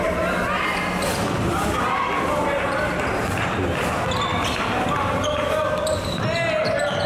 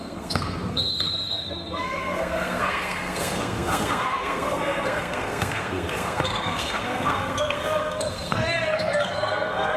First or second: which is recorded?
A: first